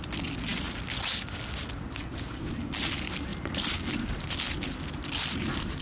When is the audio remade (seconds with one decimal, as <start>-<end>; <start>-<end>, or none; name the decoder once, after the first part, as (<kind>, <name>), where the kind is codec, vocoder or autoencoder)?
none